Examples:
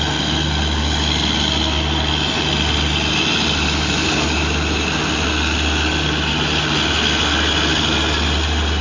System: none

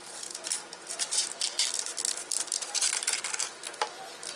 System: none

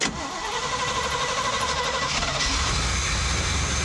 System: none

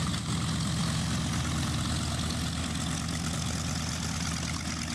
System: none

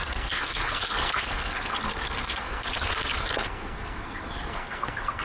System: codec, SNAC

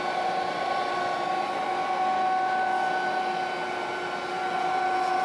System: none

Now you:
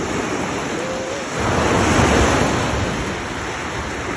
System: none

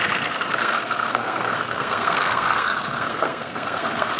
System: codec, SNAC